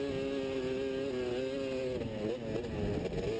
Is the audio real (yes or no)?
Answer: yes